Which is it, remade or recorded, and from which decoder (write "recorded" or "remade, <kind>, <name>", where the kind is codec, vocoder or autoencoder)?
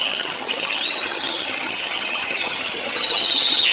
remade, vocoder, HiFi-GAN